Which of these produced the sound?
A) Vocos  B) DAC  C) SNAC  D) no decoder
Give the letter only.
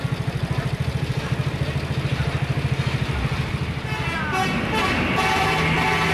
D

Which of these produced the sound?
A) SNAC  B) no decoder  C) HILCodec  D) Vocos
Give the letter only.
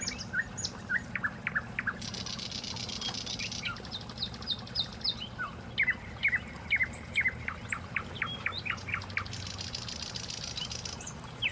B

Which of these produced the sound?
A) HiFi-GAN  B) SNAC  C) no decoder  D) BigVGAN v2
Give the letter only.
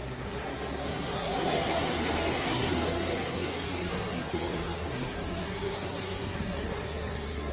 B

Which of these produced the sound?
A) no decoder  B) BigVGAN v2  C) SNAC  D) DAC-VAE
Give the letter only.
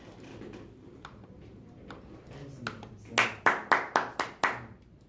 A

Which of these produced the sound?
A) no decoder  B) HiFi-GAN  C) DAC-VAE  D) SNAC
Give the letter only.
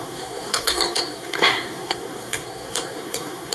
D